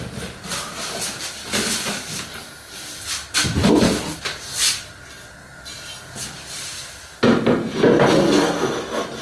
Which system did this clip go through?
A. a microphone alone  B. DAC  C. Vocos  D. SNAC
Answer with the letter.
A